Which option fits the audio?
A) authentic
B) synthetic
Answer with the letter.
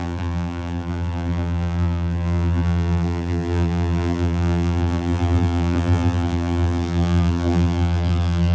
B